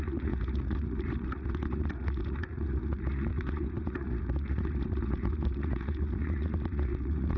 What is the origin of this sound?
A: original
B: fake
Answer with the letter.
B